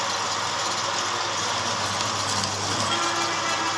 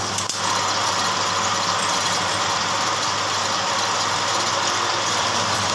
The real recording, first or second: first